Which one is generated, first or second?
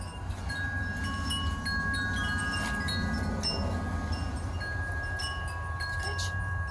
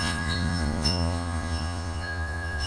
second